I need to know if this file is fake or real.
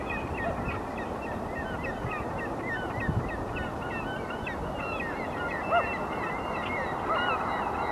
real